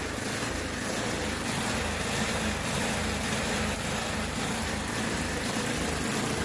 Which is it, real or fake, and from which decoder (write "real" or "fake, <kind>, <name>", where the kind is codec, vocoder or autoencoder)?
real